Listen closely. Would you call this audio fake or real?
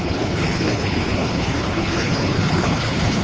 fake